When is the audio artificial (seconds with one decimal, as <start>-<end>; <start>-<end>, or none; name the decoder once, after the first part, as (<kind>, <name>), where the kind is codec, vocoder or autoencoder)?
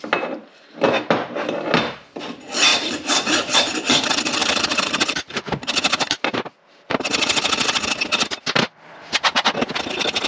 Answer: 2.7-3.7 (vocoder, BigVGAN v2); 4.4-5.7